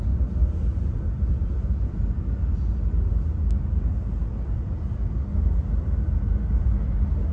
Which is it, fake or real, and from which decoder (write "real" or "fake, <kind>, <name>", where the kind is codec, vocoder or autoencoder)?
real